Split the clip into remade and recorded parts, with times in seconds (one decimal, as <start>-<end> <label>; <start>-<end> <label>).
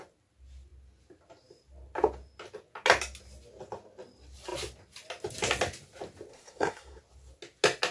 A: 0.0-6.3 recorded; 6.3-7.0 remade; 7.0-7.9 recorded